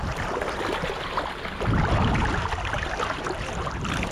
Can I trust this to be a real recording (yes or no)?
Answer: yes